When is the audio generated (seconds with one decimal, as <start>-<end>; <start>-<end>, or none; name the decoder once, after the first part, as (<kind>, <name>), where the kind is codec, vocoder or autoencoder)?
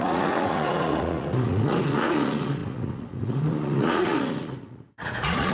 0.0-5.5 (vocoder, Vocos)